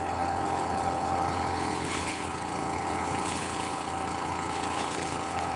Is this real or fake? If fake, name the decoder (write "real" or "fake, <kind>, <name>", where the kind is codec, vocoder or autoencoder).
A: fake, codec, HILCodec